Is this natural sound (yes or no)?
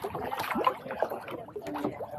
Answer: yes